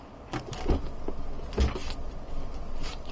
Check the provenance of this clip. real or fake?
real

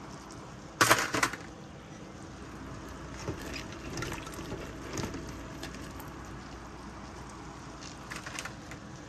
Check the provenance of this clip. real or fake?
real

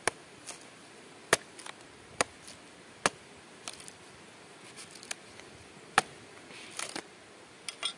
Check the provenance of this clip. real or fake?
real